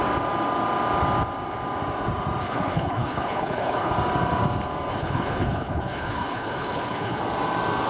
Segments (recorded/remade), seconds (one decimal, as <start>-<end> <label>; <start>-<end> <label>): 0.0-2.4 recorded; 2.4-3.9 remade; 3.9-4.9 recorded; 4.9-7.2 remade; 7.2-7.9 recorded